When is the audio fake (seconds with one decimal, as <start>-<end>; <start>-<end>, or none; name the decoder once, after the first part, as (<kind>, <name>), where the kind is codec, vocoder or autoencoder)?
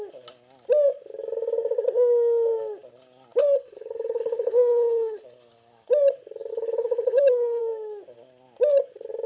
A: 3.4-5.9 (codec, HILCodec); 6.5-7.6